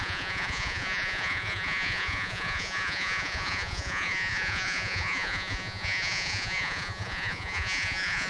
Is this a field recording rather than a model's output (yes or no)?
no